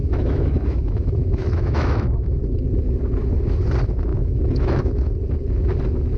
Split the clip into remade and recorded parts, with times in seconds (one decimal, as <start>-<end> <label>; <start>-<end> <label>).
0.0-2.4 remade; 2.4-4.1 recorded; 4.1-5.1 remade; 5.1-6.2 recorded